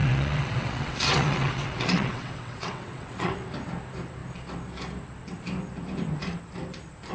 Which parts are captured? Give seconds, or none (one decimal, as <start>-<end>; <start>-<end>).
3.3-7.1